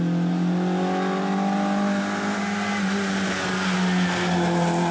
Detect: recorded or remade recorded